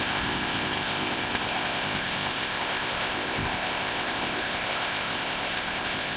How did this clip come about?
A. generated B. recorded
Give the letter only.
A